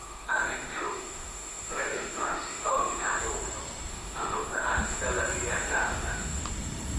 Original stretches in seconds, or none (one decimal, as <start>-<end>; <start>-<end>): 3.2-3.9; 5.0-5.6; 6.4-7.0